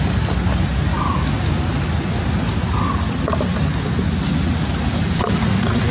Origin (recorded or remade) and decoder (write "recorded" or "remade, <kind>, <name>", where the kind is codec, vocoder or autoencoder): recorded